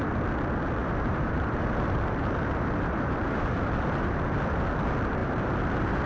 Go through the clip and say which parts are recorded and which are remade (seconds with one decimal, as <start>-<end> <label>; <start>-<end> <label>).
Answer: 0.0-0.8 recorded; 0.8-4.2 remade; 4.2-5.2 recorded; 5.2-6.1 remade